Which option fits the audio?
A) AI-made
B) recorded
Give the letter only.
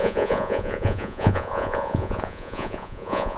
A